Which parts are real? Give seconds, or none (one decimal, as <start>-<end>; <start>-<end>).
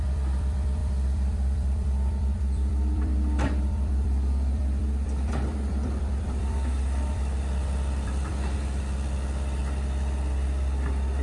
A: 9.6-11.2